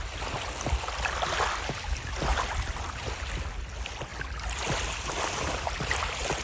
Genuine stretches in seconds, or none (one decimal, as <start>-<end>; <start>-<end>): 0.0-2.3; 3.3-6.4